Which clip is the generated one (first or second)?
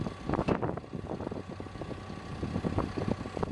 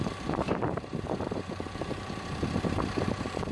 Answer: second